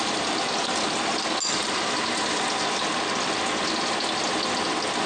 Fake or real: real